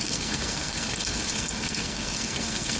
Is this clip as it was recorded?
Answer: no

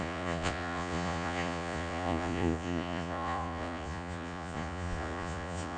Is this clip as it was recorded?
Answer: no